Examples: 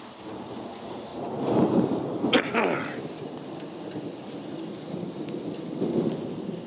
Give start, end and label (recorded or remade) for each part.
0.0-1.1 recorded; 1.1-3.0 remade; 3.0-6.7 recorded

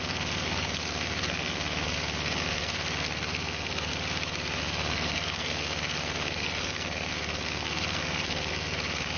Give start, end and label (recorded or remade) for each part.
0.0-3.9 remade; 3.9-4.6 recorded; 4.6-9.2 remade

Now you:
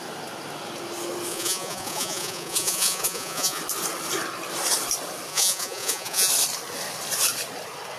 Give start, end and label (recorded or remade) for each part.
0.0-1.3 recorded; 1.3-3.6 remade; 3.6-5.3 recorded; 5.3-6.3 remade; 6.3-8.0 recorded